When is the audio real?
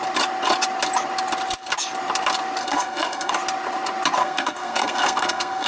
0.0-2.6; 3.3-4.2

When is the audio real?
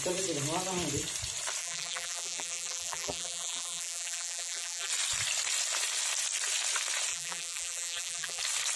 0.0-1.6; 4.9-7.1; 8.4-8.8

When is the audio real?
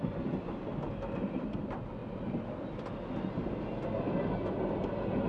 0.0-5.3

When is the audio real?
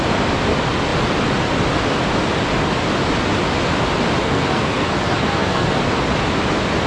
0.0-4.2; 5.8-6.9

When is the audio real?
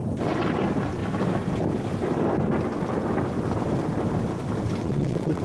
0.0-4.8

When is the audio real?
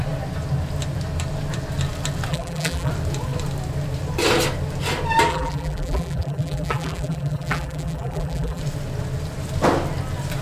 0.0-2.3; 2.9-5.3; 8.6-10.4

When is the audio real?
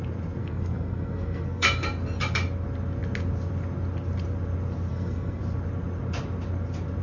0.0-0.4; 1.7-4.9; 5.4-7.0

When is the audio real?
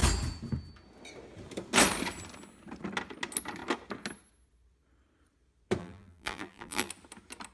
0.0-5.8; 6.9-7.5